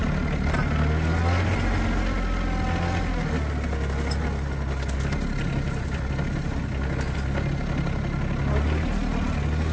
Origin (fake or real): real